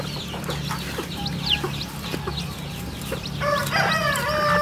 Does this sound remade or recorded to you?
recorded